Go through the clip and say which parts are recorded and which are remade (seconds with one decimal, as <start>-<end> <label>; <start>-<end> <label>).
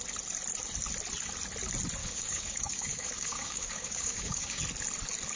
0.0-2.0 recorded; 2.0-4.6 remade; 4.6-5.4 recorded